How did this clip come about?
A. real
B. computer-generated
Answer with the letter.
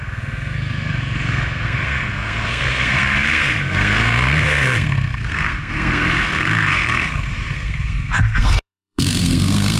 B